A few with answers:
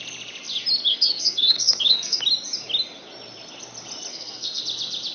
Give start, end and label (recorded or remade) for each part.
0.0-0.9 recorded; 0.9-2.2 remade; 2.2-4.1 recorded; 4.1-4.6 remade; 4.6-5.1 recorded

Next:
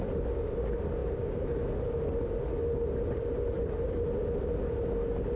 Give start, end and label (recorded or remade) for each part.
0.0-5.4 recorded

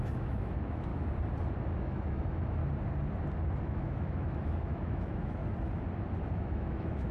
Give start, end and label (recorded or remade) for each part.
0.0-0.9 remade; 0.9-1.8 recorded; 1.8-2.6 remade; 2.6-3.6 recorded; 3.6-5.4 remade; 5.4-6.2 recorded; 6.2-7.1 remade

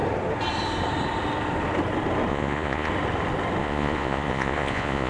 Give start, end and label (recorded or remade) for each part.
0.0-2.3 recorded; 2.3-2.9 remade; 2.9-3.6 recorded; 3.6-5.1 remade

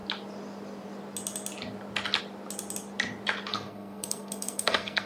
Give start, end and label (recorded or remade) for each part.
0.0-3.5 recorded; 3.5-5.1 remade

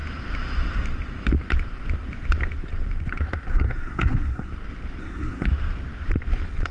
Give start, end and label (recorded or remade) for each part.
0.0-3.5 recorded; 3.5-4.5 remade; 4.5-5.0 recorded; 5.0-5.5 remade; 5.5-6.7 recorded